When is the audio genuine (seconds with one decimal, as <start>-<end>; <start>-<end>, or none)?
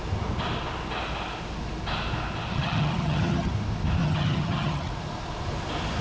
0.0-2.5; 3.5-4.0; 4.9-6.0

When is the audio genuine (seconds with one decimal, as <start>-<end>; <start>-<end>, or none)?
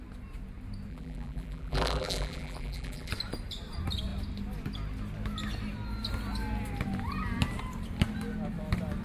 0.0-0.9; 3.1-9.0